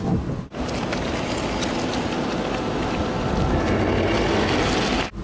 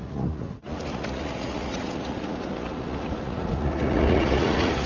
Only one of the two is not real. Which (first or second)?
second